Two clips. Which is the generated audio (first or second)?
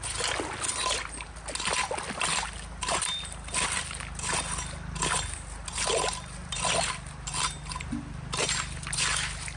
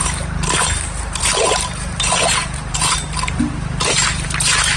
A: second